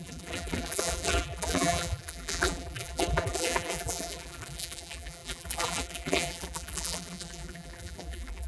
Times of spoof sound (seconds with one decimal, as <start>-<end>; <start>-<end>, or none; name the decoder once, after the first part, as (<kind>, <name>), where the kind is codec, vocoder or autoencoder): 0.0-8.5 (vocoder, BigVGAN v2)